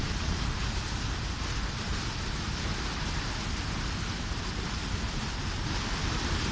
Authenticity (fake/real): real